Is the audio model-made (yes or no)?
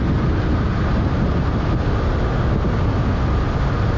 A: no